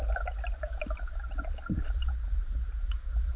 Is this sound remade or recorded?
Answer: recorded